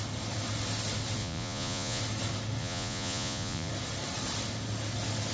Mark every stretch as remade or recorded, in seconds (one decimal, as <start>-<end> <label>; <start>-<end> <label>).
0.0-1.2 recorded; 1.2-2.0 remade; 2.0-2.6 recorded; 2.6-3.7 remade; 3.7-5.3 recorded